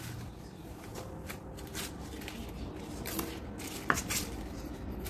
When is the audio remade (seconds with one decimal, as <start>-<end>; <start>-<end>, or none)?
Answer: none